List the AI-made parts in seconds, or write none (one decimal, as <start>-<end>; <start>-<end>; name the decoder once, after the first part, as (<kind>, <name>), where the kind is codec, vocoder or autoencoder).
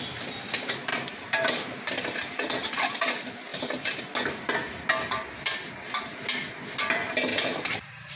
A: 0.9-1.9 (vocoder, BigVGAN v2); 3.5-4.0; 7.3-8.2